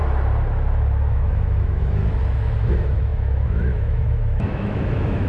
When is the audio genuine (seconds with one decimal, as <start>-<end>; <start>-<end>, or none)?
0.0-1.1; 2.0-2.6